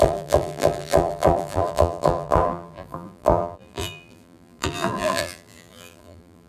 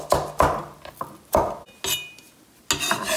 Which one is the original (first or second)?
second